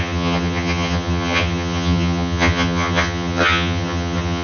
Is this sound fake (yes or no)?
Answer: yes